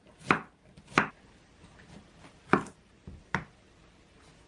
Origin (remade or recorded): recorded